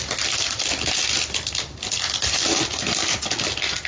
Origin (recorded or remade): recorded